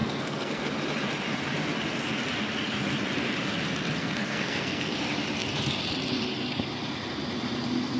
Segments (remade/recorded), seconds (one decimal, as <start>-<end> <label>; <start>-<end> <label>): 0.0-0.6 remade; 0.6-4.0 recorded; 4.0-5.0 remade; 5.0-8.0 recorded

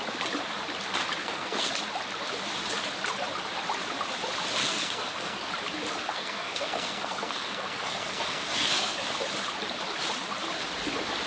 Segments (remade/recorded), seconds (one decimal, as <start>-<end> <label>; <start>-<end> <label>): 0.0-1.2 recorded; 1.2-1.7 remade; 1.7-4.6 recorded; 4.6-5.5 remade; 5.5-6.0 recorded; 6.0-9.0 remade; 9.0-11.3 recorded

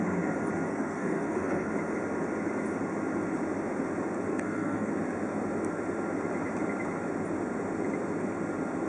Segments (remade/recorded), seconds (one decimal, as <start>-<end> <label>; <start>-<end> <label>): 0.0-0.7 recorded; 0.7-1.7 remade; 1.7-4.3 recorded; 4.3-4.9 remade; 4.9-8.9 recorded

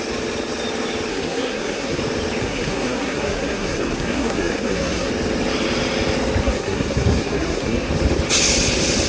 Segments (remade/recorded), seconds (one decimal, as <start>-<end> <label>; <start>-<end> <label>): 0.0-1.1 recorded; 1.1-2.0 remade; 2.0-2.4 recorded; 2.4-5.1 remade; 5.1-6.4 recorded; 6.4-7.9 remade; 7.9-9.1 recorded

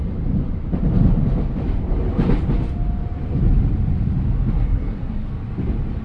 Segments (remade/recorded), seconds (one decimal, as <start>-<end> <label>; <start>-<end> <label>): 0.0-4.5 recorded; 4.5-5.3 remade; 5.3-6.0 recorded

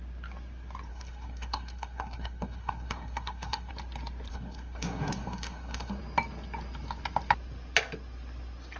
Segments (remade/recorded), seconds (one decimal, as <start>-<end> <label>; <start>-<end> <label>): 0.0-0.9 recorded; 0.9-3.7 remade; 3.7-4.3 recorded; 4.3-6.0 remade; 6.0-8.8 recorded

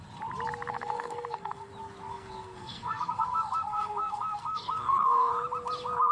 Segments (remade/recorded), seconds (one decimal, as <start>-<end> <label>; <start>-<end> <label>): 0.0-0.7 recorded; 0.7-1.7 remade; 1.7-2.1 recorded; 2.1-5.3 remade; 5.3-6.1 recorded